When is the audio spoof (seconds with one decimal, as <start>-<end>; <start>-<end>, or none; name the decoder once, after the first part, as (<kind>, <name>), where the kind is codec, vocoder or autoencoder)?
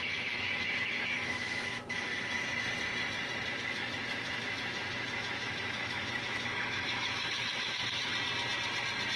0.0-2.1 (autoencoder, DAC-VAE); 3.5-8.1